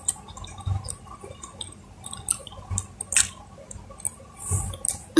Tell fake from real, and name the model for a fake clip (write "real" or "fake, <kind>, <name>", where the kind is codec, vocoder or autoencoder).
real